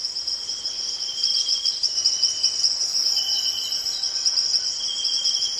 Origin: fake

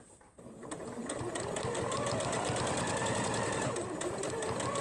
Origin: fake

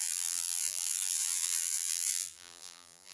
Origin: fake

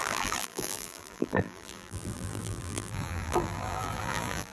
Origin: fake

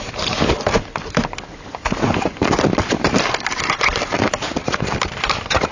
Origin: fake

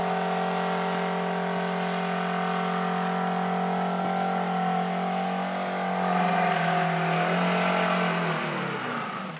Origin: real